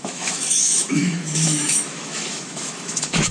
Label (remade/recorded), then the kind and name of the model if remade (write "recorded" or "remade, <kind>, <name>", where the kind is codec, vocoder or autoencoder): remade, autoencoder, DAC-VAE